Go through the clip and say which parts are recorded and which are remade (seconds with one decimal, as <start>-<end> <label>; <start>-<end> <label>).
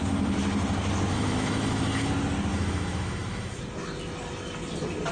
0.0-1.1 recorded; 1.1-2.1 remade; 2.1-2.5 recorded; 2.5-3.6 remade; 3.6-5.1 recorded